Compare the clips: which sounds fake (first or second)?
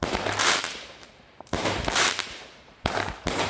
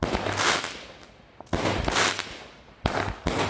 first